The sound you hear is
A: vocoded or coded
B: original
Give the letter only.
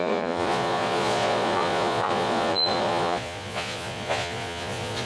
A